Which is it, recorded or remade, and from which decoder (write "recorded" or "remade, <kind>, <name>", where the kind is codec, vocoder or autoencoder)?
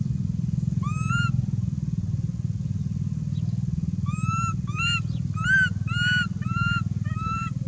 recorded